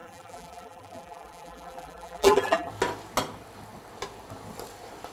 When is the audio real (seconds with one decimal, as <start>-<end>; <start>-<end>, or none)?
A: 2.7-5.1